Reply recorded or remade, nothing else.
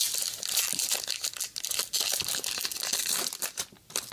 recorded